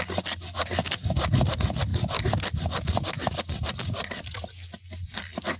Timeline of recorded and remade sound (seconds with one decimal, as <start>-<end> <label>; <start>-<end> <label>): 0.0-5.6 recorded